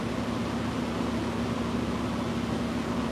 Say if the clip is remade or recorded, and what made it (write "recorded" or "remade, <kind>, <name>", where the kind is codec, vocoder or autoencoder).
recorded